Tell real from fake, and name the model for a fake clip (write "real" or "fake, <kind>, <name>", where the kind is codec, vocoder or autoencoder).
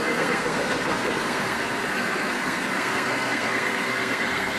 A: fake, codec, SNAC